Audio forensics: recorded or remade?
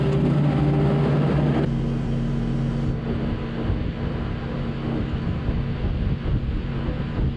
recorded